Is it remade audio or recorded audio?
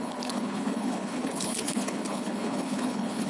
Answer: remade